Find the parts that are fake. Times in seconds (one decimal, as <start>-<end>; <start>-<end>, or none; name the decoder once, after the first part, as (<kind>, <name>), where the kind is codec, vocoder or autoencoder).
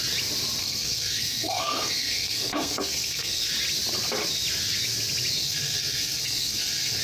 0.6-3.5 (codec, SNAC); 5.4-7.0